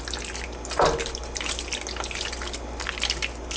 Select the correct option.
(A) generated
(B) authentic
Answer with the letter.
B